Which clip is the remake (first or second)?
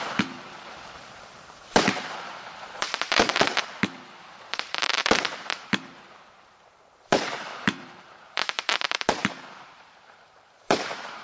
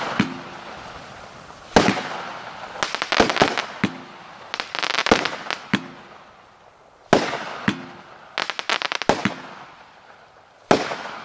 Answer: first